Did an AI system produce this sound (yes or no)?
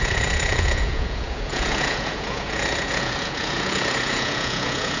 yes